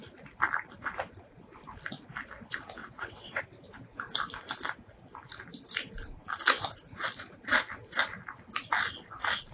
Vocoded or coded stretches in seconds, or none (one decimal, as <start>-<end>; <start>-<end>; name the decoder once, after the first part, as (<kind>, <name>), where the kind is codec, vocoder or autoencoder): 2.8-3.4 (vocoder, WaveNeXt)